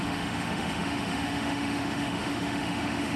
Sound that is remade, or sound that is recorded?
remade